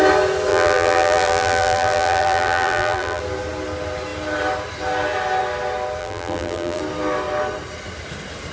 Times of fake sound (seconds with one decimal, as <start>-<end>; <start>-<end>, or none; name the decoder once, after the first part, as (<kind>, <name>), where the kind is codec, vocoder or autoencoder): 0.5-3.2 (vocoder, BigVGAN v2); 6.0-6.8